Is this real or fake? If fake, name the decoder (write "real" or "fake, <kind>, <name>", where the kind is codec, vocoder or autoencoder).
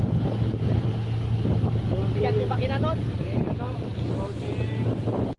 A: real